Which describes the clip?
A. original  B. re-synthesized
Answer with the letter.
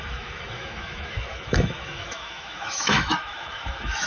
B